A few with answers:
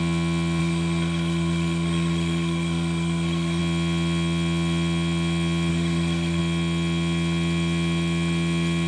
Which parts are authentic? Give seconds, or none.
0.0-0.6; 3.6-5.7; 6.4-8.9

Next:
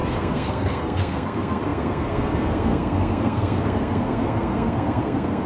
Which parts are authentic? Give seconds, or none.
none

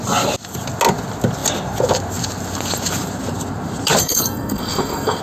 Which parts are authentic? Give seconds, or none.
0.0-4.0

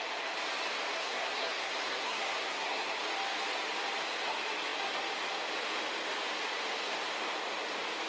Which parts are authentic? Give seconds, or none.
0.0-1.0; 2.9-8.1

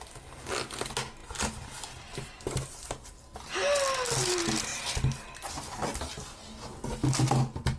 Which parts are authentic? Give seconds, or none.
0.0-7.8

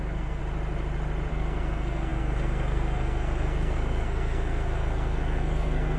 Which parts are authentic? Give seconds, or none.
0.4-1.3